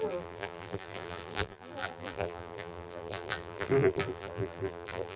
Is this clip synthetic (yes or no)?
yes